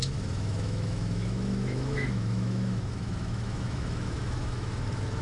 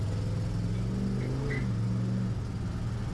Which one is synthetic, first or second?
first